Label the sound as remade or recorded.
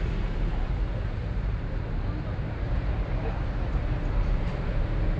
remade